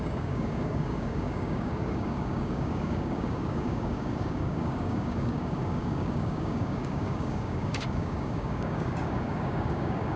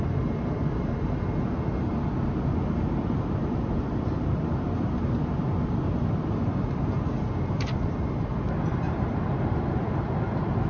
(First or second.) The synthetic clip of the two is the first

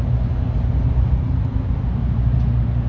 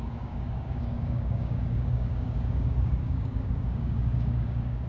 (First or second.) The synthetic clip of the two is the second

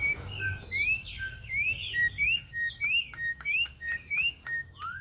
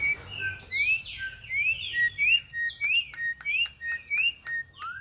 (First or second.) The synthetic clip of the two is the first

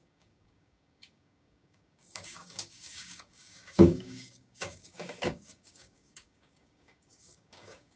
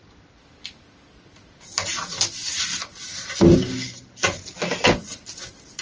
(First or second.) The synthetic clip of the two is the first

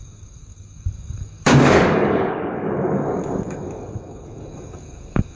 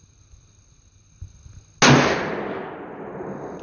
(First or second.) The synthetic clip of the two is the first